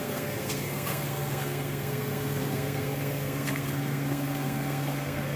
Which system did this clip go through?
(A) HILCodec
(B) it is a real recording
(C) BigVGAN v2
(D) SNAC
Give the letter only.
D